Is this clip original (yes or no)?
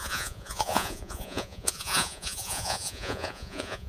no